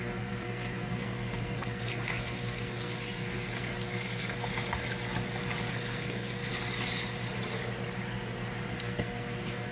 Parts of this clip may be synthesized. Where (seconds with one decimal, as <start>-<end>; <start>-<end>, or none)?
0.0-4.5; 5.7-6.5; 8.7-9.7